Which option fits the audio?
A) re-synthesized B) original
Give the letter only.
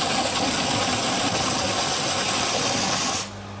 B